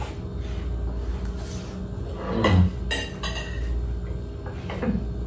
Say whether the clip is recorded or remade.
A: recorded